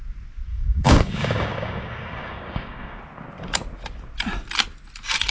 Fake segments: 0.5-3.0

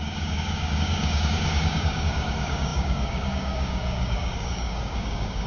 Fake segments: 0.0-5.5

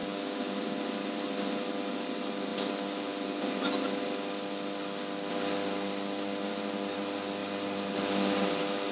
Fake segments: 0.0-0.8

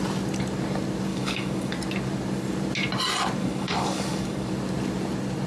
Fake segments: 1.1-1.7; 3.4-4.5

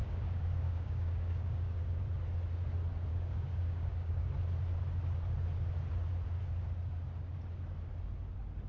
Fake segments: 0.0-2.0; 3.1-4.3

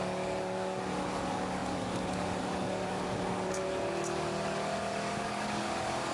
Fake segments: 0.0-6.1

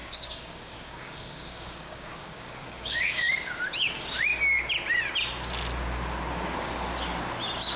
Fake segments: 0.0-3.6